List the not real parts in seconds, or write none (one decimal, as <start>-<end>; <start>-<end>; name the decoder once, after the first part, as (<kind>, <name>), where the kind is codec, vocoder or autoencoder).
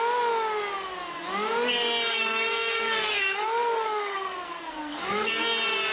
2.1-5.3 (codec, SNAC)